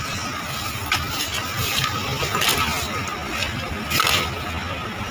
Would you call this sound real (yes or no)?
yes